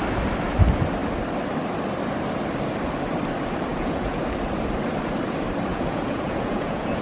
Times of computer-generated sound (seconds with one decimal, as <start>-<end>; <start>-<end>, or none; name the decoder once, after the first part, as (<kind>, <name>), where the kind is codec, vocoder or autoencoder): 3.7-4.2 (vocoder, Vocos); 5.7-7.0